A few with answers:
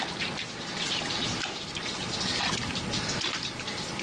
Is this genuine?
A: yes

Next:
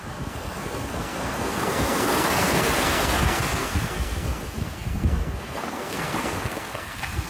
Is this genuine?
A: no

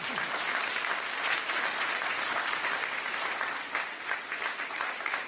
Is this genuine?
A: yes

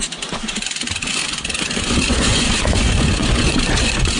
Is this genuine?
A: no